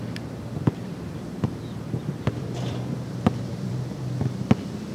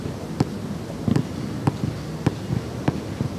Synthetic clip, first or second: first